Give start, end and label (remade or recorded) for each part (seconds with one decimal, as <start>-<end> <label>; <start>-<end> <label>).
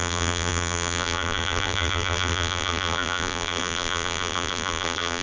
0.0-5.2 remade